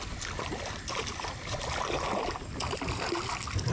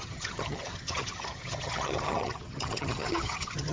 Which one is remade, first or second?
second